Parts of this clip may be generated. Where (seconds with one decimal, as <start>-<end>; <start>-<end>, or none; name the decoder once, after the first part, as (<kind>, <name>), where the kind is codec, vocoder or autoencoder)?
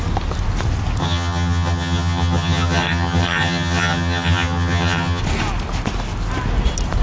1.0-5.2 (vocoder, HiFi-GAN)